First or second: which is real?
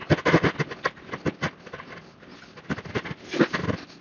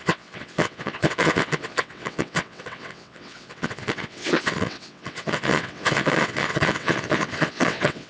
first